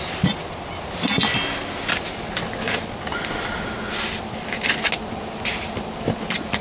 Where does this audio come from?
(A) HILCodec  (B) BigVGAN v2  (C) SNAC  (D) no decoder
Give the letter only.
D